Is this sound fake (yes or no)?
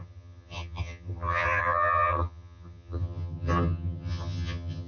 yes